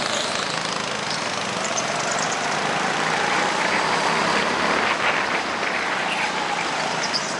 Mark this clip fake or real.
real